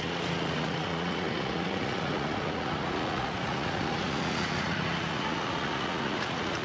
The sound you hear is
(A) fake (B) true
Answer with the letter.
A